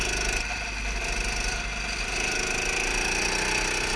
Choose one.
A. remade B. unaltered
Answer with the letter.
B